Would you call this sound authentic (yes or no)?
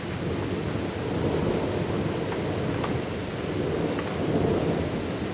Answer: yes